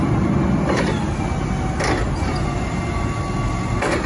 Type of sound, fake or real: real